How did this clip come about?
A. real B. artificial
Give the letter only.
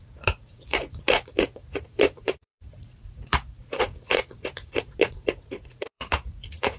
B